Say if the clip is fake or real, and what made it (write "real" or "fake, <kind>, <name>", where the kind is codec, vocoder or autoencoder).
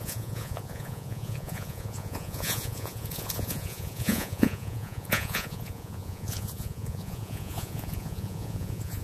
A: fake, vocoder, Vocos